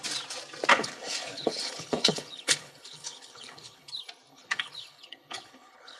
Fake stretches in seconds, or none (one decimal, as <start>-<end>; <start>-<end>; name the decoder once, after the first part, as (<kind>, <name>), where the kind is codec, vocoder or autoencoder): 0.7-3.9 (codec, HILCodec); 4.3-6.0